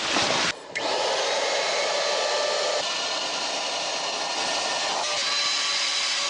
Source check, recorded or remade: recorded